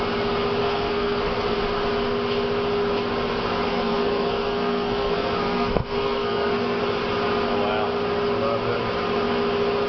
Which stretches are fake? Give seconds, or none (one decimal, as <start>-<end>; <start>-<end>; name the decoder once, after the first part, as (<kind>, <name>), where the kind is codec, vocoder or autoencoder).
0.6-1.6 (codec, SNAC); 3.7-6.8